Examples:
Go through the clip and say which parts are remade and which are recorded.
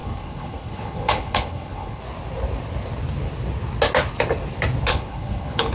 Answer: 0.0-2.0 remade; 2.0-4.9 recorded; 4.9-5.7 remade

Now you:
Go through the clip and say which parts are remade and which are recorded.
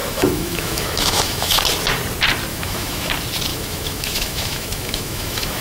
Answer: 0.0-1.6 remade; 1.6-2.5 recorded; 2.5-3.1 remade; 3.1-3.5 recorded; 3.5-5.6 remade